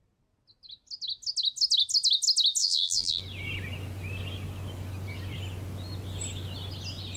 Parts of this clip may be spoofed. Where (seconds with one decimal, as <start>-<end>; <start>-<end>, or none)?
2.6-3.2